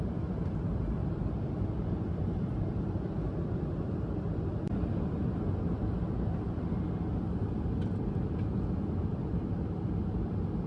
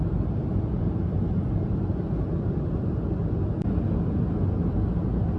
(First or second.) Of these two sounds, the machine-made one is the first